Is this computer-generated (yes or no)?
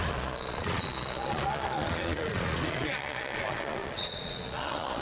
yes